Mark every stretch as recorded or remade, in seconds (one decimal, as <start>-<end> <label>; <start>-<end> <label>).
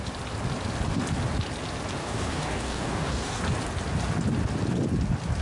0.0-2.0 recorded; 2.0-3.4 remade; 3.4-5.4 recorded